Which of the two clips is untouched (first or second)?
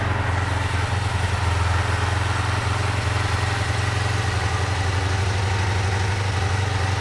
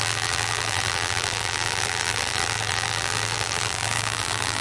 first